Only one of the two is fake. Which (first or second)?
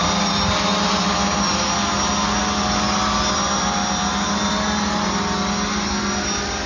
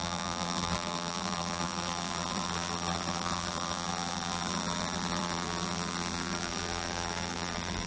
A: second